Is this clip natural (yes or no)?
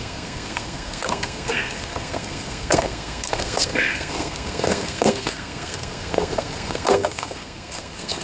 no